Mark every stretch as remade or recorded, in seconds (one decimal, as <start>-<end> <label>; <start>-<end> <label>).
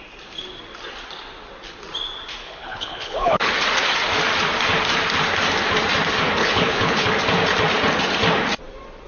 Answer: 0.0-2.4 recorded; 2.4-3.5 remade; 3.5-6.4 recorded; 6.4-7.1 remade; 7.1-9.1 recorded